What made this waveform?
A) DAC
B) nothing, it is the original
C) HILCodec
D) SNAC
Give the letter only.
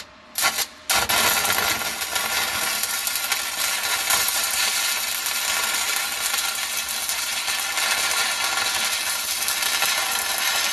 B